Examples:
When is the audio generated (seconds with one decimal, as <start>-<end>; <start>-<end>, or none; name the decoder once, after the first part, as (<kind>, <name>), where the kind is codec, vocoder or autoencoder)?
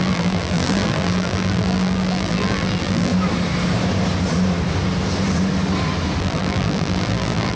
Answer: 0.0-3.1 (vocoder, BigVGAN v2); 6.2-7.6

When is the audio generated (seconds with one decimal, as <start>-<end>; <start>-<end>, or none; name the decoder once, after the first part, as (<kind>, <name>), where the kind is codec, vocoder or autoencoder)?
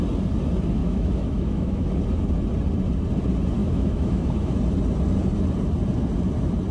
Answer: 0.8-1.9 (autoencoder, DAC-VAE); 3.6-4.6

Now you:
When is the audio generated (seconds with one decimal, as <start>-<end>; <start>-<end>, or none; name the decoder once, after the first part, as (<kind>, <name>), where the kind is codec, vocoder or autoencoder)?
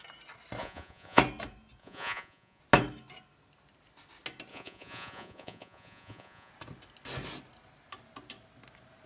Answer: 0.6-1.2 (vocoder, Vocos); 1.8-2.6; 4.5-6.5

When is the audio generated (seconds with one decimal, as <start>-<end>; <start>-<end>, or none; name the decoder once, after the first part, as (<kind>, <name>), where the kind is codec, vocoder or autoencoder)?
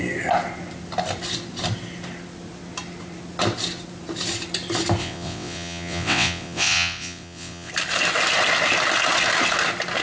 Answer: 5.0-7.7 (vocoder, WaveNeXt)